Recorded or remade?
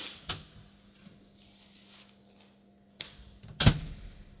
recorded